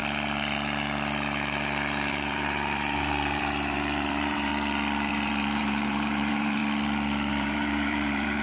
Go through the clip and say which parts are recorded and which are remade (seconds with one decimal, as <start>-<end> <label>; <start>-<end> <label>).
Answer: 0.0-2.1 recorded; 2.1-4.5 remade; 4.5-5.1 recorded; 5.1-6.6 remade; 6.6-7.3 recorded; 7.3-8.4 remade